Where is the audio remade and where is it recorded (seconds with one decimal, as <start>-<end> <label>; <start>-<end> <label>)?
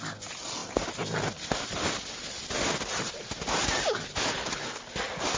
0.0-5.4 recorded